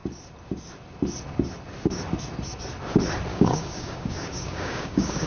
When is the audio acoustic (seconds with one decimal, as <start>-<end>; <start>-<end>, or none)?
0.0-3.3